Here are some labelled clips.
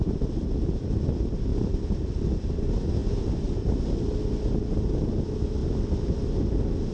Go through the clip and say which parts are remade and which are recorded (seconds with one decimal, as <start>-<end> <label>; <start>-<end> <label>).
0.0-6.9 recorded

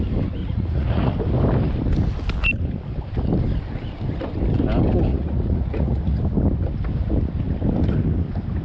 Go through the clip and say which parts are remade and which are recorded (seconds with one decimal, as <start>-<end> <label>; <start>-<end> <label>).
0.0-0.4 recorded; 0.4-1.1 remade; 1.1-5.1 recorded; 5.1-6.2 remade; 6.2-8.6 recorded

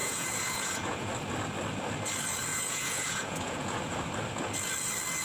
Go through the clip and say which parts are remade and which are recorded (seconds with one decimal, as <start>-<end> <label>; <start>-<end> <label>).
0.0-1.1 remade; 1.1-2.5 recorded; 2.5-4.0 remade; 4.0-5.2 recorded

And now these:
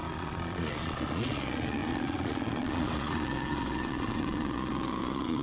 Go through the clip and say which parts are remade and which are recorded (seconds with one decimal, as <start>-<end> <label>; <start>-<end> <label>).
0.0-5.4 remade

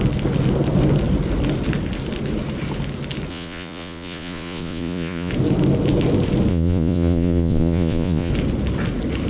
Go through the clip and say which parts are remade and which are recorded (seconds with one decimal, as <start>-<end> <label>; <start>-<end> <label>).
0.0-3.3 recorded; 3.3-5.3 remade; 5.3-6.5 recorded; 6.5-8.3 remade; 8.3-9.3 recorded

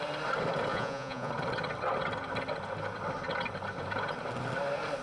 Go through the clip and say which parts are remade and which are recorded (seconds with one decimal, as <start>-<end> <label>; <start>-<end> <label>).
0.0-0.7 recorded; 0.7-1.3 remade; 1.3-5.0 recorded